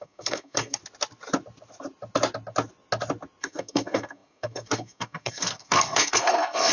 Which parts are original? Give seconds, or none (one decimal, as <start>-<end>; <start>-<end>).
0.8-3.4